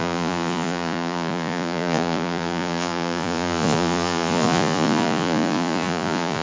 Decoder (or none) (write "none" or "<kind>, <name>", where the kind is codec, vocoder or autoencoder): vocoder, Vocos